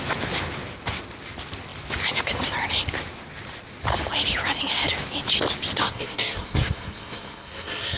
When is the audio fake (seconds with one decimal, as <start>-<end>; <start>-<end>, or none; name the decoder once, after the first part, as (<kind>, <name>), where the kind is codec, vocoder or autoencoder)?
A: 5.8-8.0 (codec, SNAC)